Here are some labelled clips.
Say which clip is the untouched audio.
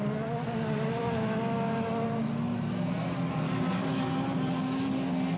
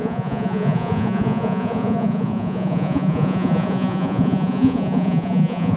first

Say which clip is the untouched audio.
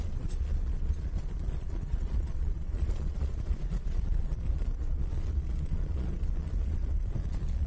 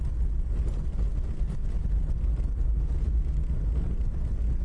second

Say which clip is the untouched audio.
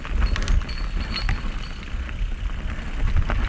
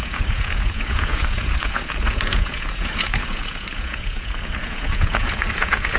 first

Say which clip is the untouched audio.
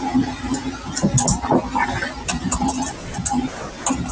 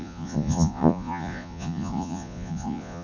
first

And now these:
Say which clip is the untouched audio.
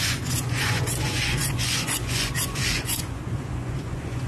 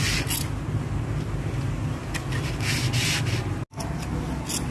second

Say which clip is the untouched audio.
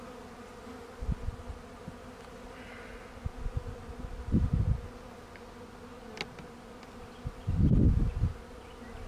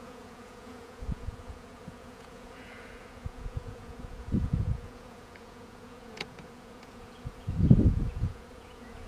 first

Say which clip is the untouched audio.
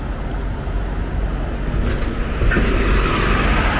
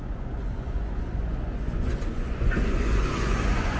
first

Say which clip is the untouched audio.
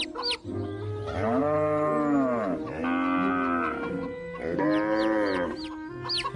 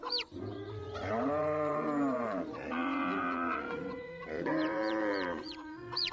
first